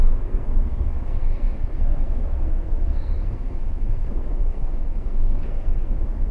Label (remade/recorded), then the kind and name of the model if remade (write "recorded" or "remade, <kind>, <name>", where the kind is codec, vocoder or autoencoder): remade, codec, SNAC